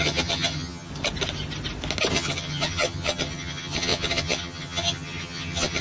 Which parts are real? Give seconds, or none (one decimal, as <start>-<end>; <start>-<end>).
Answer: 0.9-2.1